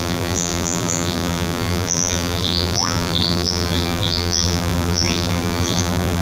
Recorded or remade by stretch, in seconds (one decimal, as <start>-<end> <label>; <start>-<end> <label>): 0.0-6.2 remade